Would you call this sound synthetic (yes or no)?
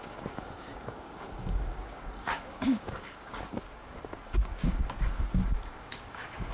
yes